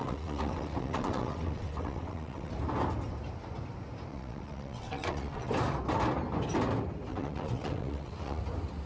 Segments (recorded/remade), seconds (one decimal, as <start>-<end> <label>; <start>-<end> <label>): 0.0-2.5 remade; 2.5-4.1 recorded; 4.1-5.5 remade; 5.5-7.1 recorded; 7.1-8.4 remade; 8.4-8.9 recorded